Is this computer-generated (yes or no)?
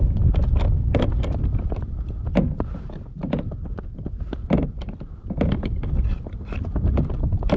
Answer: no